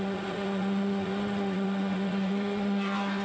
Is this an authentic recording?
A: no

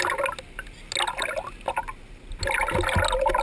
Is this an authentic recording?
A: yes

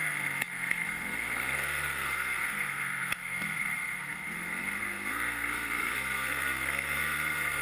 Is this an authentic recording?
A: no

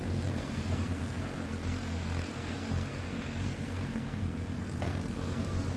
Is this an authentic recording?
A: no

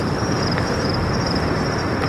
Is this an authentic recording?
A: no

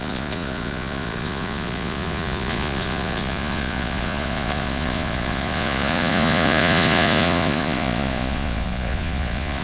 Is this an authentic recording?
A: no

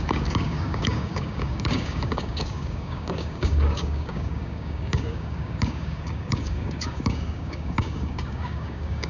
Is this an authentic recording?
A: no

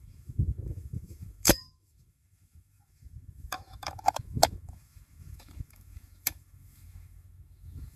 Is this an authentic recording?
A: no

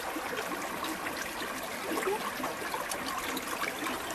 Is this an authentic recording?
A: yes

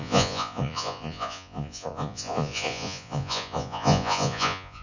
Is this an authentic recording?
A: no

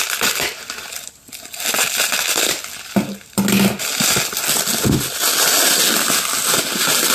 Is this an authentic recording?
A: yes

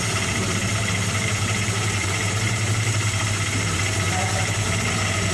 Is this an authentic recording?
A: no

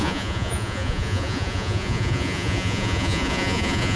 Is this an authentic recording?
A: no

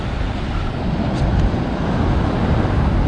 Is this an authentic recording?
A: yes